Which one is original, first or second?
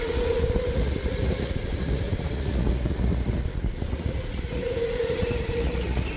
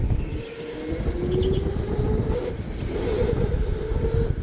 second